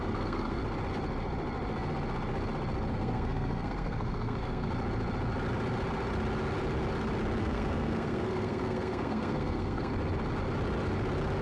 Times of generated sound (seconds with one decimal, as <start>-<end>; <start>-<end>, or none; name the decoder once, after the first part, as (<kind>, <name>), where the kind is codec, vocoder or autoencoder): 0.0-0.6 (codec, SNAC); 2.9-4.7; 7.4-9.9